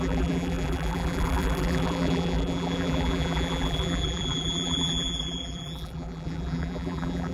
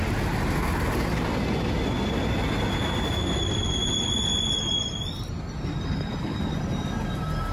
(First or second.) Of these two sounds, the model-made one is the first